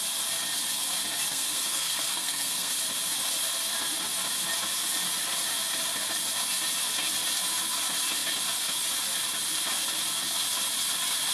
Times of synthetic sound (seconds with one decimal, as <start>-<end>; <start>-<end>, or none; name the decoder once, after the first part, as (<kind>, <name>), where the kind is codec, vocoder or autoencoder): 1.3-2.7 (codec, SNAC)